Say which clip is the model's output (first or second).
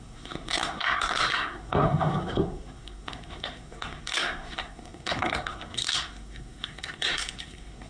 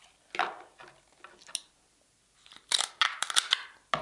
first